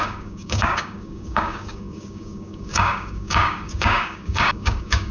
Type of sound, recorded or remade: remade